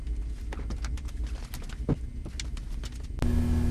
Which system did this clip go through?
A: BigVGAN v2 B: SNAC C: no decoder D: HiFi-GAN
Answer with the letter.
C